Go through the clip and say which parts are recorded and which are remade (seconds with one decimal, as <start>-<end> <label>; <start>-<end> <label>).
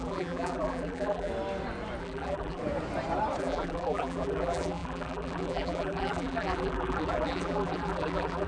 0.0-1.3 remade; 1.3-2.0 recorded; 2.0-2.6 remade; 2.6-3.4 recorded; 3.4-8.5 remade